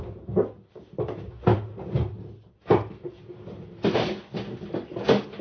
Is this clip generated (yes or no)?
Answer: no